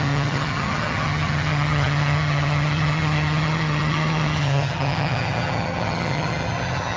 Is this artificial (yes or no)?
yes